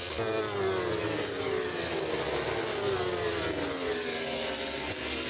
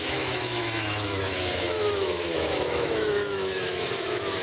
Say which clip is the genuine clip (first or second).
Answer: first